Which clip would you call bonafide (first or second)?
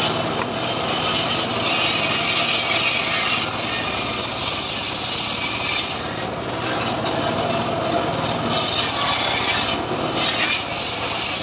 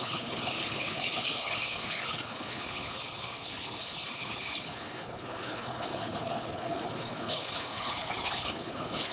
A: first